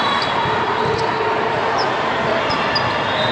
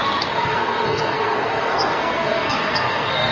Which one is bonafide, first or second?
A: first